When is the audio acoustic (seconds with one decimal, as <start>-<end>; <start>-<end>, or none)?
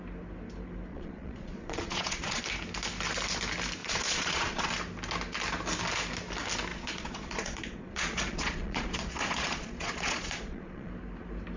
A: 0.0-0.9; 2.4-3.8; 4.7-6.7; 10.9-11.6